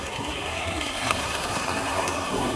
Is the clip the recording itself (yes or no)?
no